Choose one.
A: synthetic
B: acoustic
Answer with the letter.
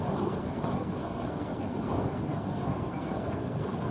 A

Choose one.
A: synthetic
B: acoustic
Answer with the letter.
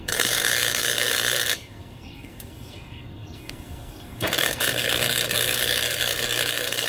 A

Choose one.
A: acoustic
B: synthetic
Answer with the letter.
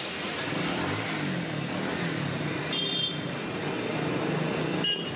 A